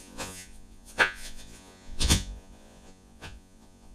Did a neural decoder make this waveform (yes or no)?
yes